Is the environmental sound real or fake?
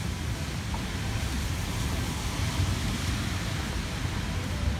real